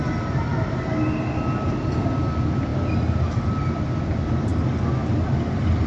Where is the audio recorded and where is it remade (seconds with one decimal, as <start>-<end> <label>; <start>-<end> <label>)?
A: 0.0-0.5 recorded; 0.5-1.0 remade; 1.0-5.9 recorded